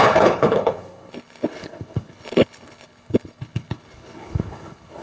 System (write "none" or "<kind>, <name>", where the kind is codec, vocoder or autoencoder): codec, HILCodec